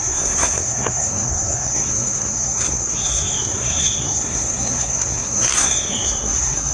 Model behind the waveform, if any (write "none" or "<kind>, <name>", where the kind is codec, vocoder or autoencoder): codec, SNAC